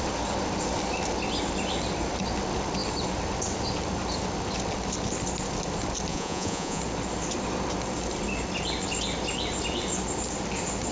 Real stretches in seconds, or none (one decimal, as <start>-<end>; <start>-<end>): 0.0-6.1; 6.8-10.9